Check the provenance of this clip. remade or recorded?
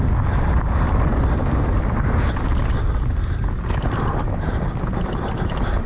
recorded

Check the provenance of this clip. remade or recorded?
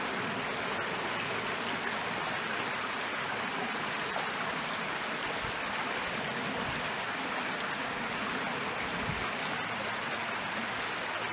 recorded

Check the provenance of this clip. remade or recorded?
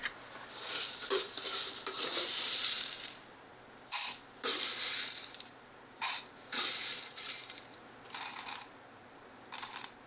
remade